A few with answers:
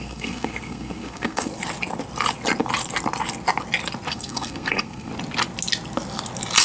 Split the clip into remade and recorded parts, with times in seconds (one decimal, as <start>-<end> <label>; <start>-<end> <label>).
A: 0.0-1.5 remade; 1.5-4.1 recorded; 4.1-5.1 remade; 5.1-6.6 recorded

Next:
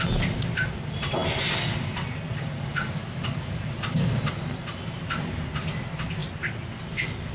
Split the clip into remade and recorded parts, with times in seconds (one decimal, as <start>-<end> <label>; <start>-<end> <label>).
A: 0.0-7.3 recorded

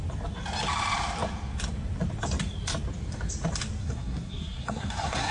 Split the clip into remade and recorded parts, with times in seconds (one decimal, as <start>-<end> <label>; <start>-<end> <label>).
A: 0.0-3.8 recorded; 3.8-5.3 remade